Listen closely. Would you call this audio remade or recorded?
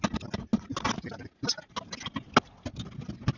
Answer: recorded